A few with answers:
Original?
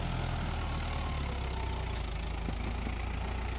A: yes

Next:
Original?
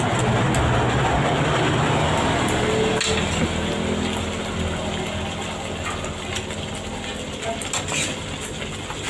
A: yes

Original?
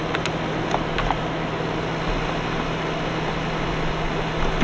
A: yes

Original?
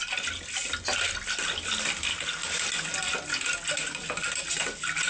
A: yes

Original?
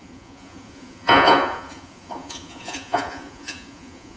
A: no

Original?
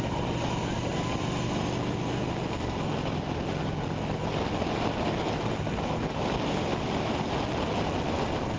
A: yes